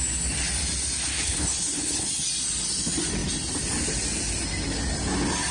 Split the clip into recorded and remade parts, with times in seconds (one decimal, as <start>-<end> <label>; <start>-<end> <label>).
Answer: 0.0-1.1 recorded; 1.1-2.1 remade; 2.1-5.5 recorded